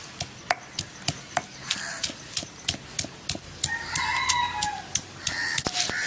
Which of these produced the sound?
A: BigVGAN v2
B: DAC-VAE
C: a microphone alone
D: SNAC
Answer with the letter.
C